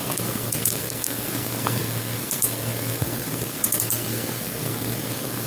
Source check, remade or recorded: remade